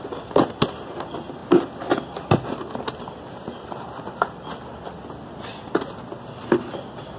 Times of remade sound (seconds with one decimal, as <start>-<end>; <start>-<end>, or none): none